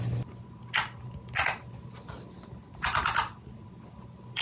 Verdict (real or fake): real